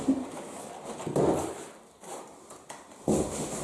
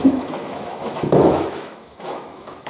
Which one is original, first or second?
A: first